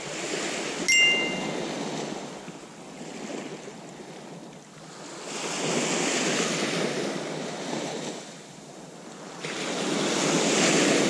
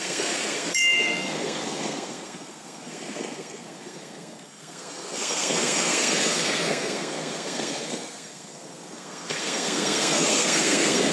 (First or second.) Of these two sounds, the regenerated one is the second